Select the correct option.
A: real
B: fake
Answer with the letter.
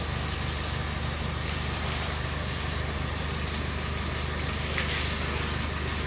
A